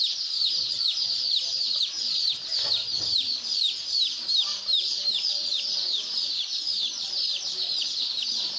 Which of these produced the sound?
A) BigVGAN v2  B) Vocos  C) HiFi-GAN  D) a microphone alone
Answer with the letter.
A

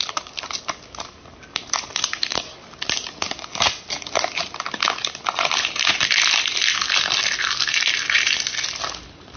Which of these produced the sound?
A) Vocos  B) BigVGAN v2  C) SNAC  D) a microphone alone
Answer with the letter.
D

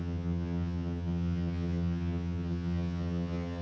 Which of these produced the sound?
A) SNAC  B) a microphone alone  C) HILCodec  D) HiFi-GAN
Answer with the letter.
D